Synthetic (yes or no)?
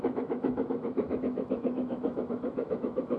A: yes